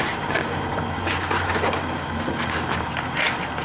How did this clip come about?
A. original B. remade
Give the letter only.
A